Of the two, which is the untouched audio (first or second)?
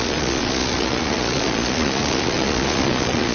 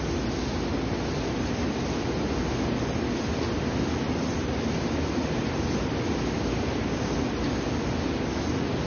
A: second